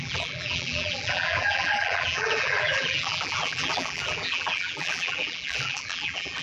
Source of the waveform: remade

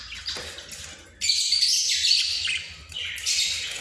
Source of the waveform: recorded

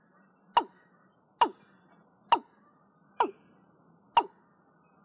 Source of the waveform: recorded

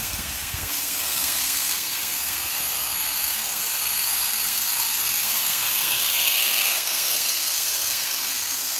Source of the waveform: remade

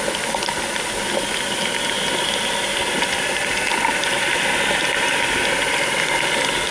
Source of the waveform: recorded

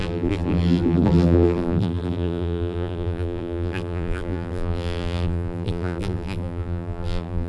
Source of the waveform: remade